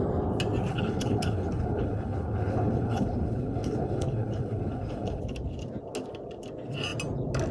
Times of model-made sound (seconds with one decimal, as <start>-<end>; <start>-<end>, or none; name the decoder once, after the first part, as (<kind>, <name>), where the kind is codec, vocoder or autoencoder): 0.7-5.2 (codec, HILCodec)